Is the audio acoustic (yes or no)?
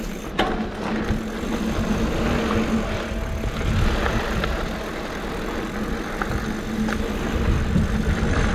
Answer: yes